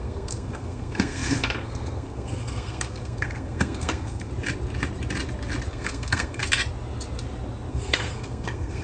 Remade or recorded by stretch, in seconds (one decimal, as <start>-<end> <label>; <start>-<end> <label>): 0.0-4.3 remade; 4.3-5.7 recorded; 5.7-6.4 remade; 6.4-7.7 recorded; 7.7-8.8 remade